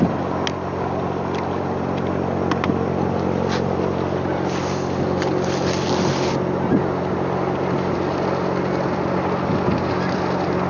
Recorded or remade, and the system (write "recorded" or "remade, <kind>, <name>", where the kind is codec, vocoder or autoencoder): recorded